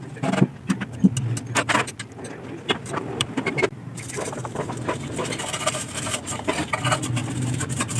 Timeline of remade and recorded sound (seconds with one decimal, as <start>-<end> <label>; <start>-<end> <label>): 0.0-2.8 recorded; 2.8-6.7 remade; 6.7-7.2 recorded; 7.2-8.0 remade